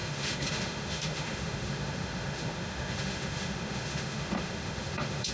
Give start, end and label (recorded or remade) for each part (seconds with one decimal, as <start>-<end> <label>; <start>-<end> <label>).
0.0-5.3 remade